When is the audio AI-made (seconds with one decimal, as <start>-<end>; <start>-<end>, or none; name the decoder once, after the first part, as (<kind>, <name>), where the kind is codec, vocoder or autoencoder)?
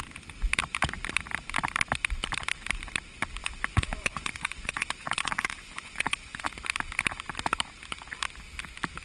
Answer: 3.4-6.5 (vocoder, Vocos)